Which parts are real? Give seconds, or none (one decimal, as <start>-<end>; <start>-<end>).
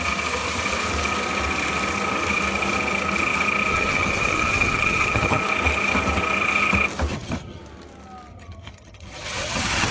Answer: 0.0-3.7; 5.4-7.1; 7.6-8.3